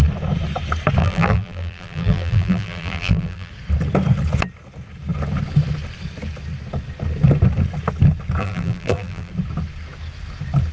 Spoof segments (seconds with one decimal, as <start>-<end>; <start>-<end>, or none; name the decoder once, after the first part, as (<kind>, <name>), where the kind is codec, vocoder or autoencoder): 1.0-3.5 (vocoder, BigVGAN v2); 8.4-9.3